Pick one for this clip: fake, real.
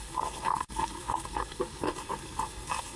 fake